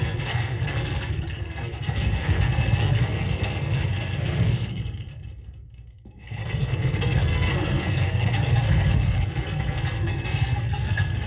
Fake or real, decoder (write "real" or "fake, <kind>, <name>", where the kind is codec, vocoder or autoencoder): fake, codec, SNAC